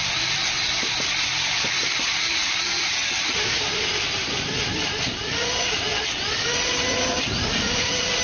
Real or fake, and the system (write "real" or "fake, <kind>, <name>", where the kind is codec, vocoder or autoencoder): real